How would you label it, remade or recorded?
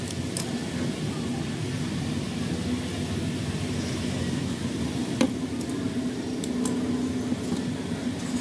recorded